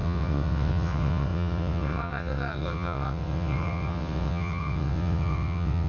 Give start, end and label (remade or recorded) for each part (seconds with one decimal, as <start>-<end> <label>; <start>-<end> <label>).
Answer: 0.0-5.9 remade